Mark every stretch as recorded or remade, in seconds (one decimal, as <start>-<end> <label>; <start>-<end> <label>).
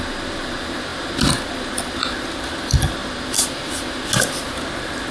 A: 0.0-5.1 recorded